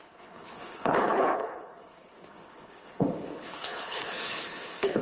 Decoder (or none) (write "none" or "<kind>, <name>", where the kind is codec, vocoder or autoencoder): codec, HILCodec